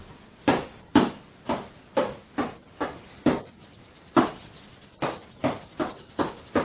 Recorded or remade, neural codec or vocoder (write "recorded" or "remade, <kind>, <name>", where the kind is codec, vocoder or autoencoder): recorded